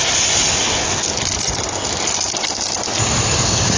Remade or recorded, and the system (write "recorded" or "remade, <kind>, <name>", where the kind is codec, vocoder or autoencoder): recorded